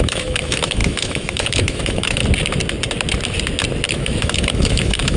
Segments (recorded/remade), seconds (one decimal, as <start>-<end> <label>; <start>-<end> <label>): 0.0-2.2 remade; 2.2-3.9 recorded; 3.9-5.2 remade